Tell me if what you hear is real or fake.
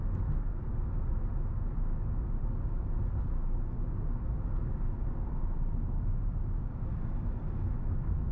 real